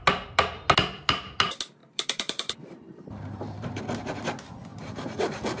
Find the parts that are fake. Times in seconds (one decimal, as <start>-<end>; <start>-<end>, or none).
1.8-3.8; 4.7-5.6